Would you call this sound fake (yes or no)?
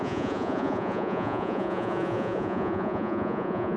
yes